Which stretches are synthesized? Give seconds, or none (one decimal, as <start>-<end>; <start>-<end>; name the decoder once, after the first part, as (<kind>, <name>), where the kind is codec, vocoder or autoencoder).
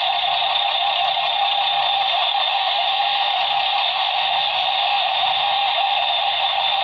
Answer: 1.9-3.4 (autoencoder, DAC-VAE); 3.8-6.8